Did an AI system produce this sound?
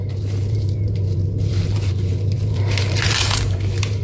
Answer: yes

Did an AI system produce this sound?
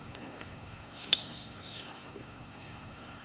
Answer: yes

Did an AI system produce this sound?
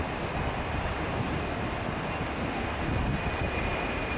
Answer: no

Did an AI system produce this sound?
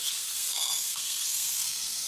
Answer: yes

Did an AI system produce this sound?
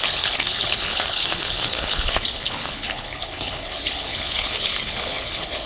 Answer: yes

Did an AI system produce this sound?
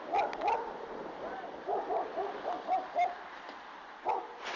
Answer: no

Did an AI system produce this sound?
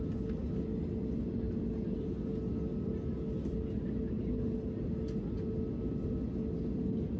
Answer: no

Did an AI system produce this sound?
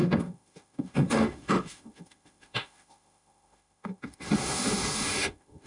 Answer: yes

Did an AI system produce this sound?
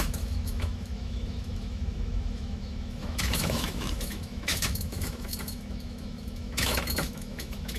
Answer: yes